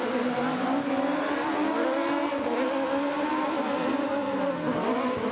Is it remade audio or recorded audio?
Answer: recorded